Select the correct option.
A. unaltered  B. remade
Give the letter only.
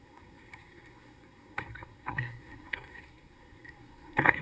B